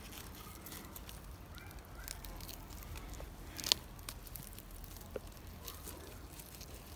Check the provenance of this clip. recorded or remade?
recorded